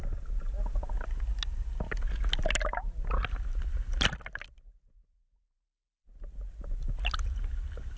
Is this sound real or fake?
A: real